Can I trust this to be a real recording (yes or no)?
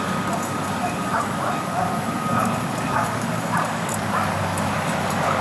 no